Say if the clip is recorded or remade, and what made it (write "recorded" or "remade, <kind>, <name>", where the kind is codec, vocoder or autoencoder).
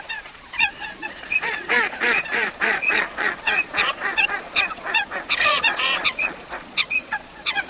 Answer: remade, vocoder, Vocos